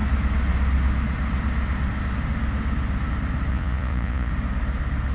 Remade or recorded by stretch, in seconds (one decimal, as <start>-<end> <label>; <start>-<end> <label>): 0.0-3.5 recorded; 3.5-4.3 remade; 4.3-5.1 recorded